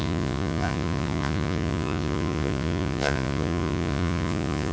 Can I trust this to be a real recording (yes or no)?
no